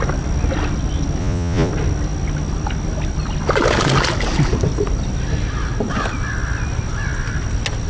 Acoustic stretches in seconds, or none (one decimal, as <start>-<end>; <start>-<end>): 0.0-1.2; 1.7-7.9